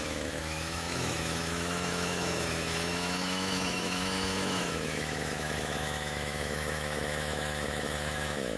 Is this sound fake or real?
fake